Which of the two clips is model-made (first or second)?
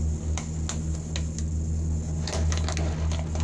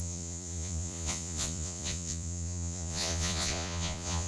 second